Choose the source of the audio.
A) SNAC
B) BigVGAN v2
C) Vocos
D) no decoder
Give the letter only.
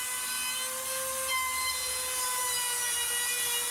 D